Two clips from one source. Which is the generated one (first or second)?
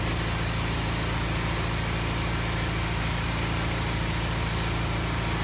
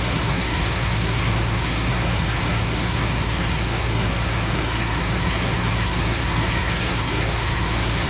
second